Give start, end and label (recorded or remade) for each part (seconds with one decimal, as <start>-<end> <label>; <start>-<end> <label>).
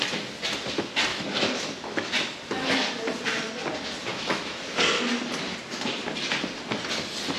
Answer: 0.0-1.1 recorded; 1.1-2.3 remade; 2.3-4.1 recorded; 4.1-4.6 remade; 4.6-7.4 recorded